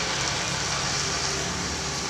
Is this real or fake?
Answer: real